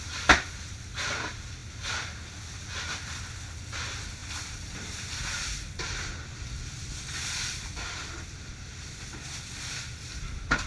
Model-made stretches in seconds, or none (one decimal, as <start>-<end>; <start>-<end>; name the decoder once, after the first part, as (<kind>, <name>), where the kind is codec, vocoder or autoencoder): none